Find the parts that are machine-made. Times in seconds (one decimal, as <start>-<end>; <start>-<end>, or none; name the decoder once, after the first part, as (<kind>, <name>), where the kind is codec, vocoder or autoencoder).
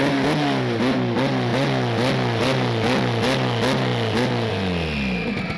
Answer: none